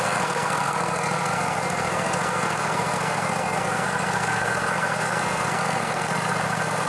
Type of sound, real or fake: fake